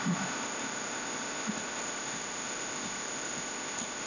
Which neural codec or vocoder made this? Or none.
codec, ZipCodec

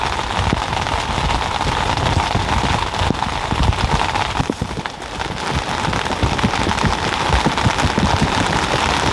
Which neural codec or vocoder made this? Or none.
none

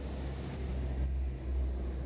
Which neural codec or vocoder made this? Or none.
none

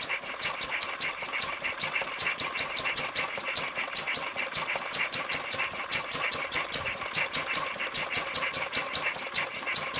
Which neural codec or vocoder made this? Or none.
vocoder, BigVGAN v2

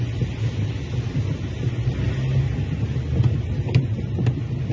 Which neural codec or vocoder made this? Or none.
none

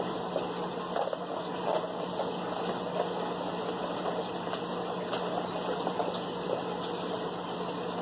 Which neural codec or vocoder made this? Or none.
none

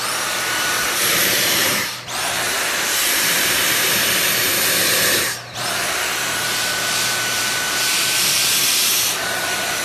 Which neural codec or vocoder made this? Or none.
vocoder, BigVGAN v2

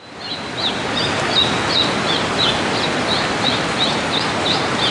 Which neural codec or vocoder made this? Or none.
none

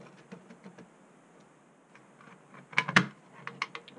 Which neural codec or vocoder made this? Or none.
none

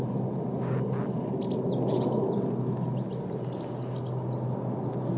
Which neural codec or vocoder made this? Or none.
none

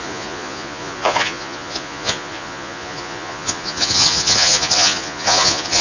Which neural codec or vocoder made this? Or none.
vocoder, Vocos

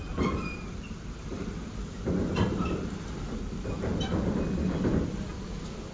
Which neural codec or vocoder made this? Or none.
vocoder, BigVGAN v2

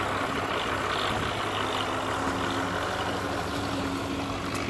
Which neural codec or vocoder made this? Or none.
none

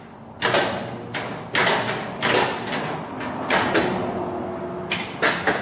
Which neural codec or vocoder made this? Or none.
none